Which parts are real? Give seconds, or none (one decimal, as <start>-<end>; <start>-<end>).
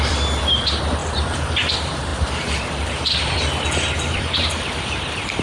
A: none